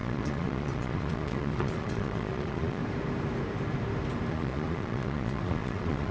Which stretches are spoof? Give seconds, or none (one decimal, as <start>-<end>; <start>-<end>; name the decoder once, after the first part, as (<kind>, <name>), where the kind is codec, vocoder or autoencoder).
0.0-2.8 (vocoder, Vocos); 4.3-6.1